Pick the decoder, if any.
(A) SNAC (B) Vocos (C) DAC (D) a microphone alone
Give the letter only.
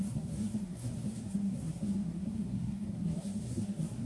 A